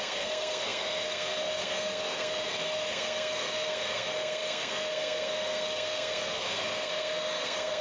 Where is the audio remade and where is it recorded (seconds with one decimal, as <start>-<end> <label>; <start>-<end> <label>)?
0.0-7.8 remade